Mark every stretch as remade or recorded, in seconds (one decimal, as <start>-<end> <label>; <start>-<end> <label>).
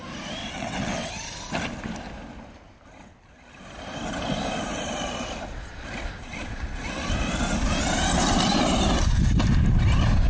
0.0-0.4 recorded; 0.4-1.1 remade; 1.1-10.3 recorded